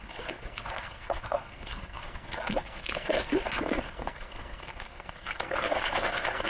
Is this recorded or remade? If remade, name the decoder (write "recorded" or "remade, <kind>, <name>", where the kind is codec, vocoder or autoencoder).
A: remade, codec, SNAC